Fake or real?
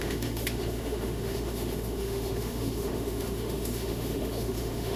fake